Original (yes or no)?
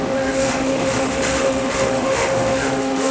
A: no